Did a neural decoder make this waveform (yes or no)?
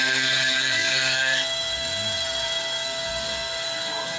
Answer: yes